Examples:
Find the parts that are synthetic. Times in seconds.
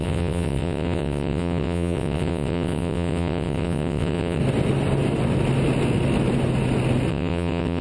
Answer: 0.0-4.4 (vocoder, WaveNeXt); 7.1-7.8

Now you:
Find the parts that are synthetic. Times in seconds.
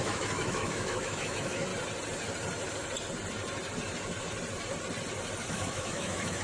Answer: 0.0-1.7 (autoencoder, DAC-VAE); 5.5-6.4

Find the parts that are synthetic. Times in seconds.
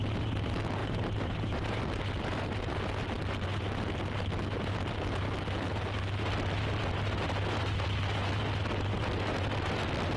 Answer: 0.8-1.8 (vocoder, BigVGAN v2)